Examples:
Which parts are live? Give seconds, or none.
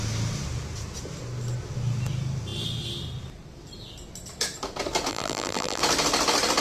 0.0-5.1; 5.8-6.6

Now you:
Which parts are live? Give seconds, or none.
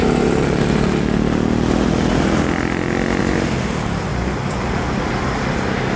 0.0-6.0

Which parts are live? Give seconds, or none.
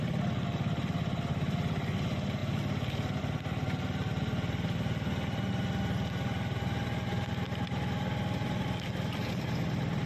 0.0-10.1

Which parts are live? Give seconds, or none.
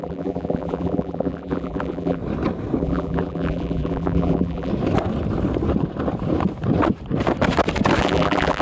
2.2-2.8; 4.7-8.0